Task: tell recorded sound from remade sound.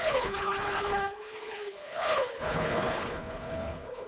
remade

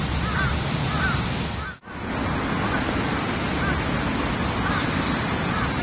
recorded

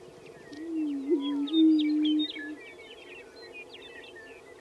recorded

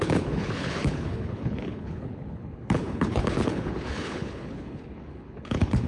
remade